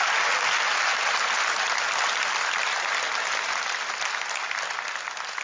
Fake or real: real